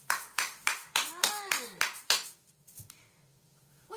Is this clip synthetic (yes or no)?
yes